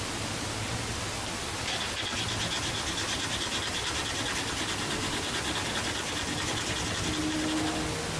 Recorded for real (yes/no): yes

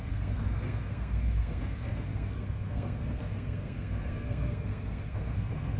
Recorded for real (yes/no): no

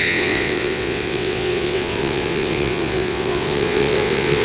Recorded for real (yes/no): no